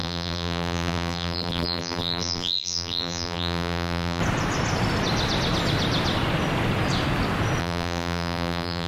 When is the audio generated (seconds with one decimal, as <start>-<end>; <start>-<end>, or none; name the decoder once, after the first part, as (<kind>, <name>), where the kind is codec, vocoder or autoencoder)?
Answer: 0.0-4.2 (vocoder, BigVGAN v2); 7.6-8.9